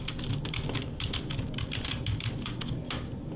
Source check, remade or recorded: recorded